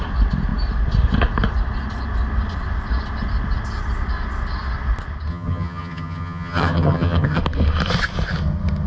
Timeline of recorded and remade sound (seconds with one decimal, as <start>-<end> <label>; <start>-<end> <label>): 0.0-5.3 recorded; 5.3-7.4 remade; 7.4-8.9 recorded